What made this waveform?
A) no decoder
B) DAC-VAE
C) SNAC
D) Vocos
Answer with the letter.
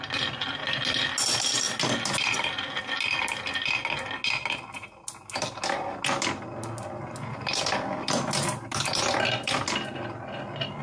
A